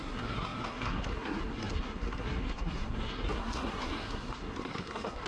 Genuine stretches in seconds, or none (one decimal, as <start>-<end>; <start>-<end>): none